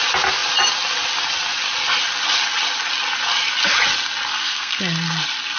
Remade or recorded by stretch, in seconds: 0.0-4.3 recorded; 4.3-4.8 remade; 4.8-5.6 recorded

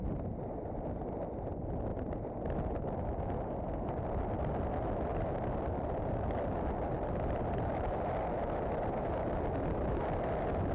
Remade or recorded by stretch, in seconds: 0.0-10.7 recorded

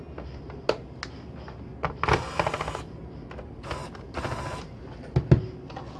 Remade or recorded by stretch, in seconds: 0.0-6.0 recorded

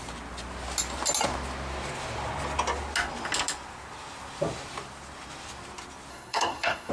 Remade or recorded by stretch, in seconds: 0.0-6.1 recorded; 6.1-6.9 remade

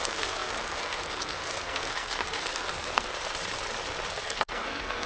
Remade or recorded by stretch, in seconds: 0.0-3.1 remade; 3.1-4.1 recorded; 4.1-5.1 remade